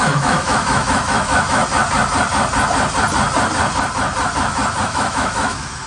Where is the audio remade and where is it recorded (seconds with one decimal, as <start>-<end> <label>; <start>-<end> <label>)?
0.0-1.6 remade; 1.6-4.8 recorded; 4.8-5.9 remade